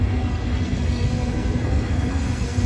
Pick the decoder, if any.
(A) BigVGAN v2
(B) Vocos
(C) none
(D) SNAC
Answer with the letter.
D